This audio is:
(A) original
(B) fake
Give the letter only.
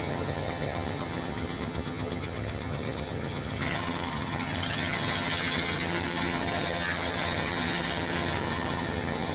B